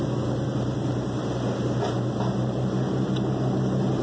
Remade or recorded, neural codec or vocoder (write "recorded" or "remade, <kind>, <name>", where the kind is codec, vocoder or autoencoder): recorded